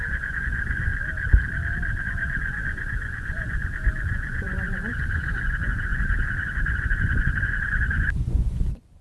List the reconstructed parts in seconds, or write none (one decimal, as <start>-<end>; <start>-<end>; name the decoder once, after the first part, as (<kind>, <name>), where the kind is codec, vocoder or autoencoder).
0.0-0.9 (vocoder, Vocos); 2.0-9.0